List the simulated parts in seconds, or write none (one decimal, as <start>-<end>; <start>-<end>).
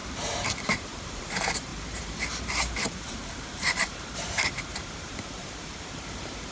0.0-6.5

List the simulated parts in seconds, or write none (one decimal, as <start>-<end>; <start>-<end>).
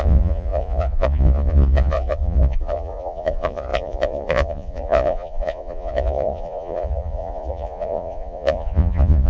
0.0-9.3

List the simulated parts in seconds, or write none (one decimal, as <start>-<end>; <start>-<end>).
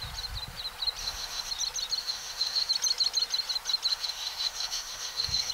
1.0-1.5; 2.0-2.7; 3.9-5.5